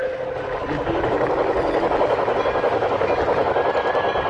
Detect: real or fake real